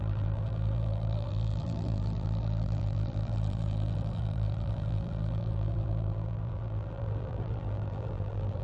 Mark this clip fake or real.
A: fake